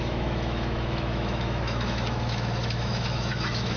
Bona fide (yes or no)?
no